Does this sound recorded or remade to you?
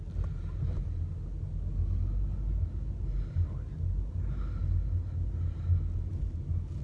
recorded